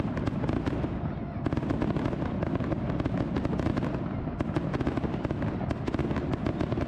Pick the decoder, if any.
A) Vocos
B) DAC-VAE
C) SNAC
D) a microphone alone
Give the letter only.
D